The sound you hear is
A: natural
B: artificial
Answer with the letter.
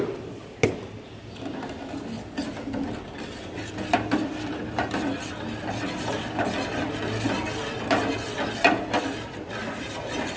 A